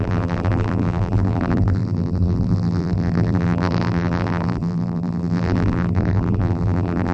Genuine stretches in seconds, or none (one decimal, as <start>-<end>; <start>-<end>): none

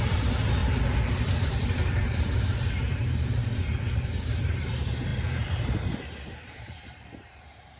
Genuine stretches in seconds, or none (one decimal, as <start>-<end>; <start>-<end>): 0.6-1.3

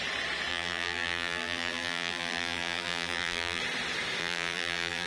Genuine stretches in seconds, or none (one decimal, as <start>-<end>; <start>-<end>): 0.0-0.5; 3.6-4.2